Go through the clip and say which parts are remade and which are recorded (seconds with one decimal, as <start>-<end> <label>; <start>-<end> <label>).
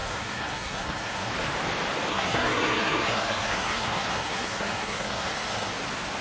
0.0-1.3 remade; 1.3-2.1 recorded; 2.1-5.7 remade; 5.7-6.2 recorded